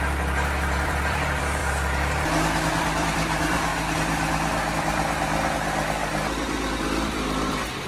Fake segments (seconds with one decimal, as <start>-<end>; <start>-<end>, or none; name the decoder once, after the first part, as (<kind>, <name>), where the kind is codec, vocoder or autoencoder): 0.0-1.6 (vocoder, BigVGAN v2); 2.8-3.7; 4.8-6.0; 6.7-7.9